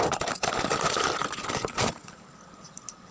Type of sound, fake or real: fake